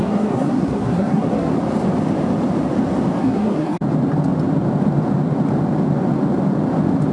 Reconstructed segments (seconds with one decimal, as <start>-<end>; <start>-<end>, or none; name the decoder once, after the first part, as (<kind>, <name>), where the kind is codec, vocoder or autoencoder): 0.0-1.5 (codec, SNAC); 3.2-3.8